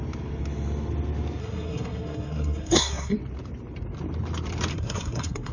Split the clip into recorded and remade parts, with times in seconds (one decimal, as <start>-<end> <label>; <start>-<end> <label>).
0.0-1.4 recorded; 1.4-3.2 remade; 3.2-4.7 recorded; 4.7-5.5 remade